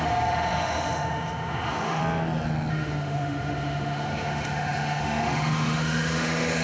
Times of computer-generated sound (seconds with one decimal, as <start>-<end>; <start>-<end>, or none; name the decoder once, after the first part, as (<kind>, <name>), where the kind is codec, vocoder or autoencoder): 0.0-2.0 (autoencoder, DAC-VAE); 2.7-6.6